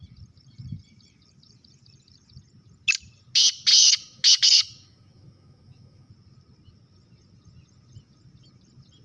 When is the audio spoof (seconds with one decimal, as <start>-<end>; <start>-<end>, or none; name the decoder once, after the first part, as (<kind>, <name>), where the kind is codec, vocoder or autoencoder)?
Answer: 3.7-6.1 (autoencoder, DAC-VAE)